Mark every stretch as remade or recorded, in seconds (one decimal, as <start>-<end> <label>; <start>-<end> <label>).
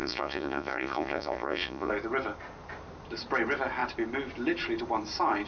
0.0-1.9 remade; 1.9-5.5 recorded